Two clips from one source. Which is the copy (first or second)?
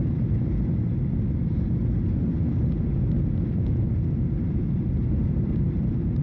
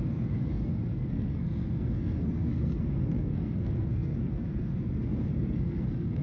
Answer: second